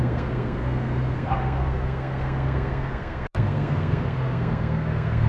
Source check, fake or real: fake